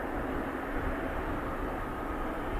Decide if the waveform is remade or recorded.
recorded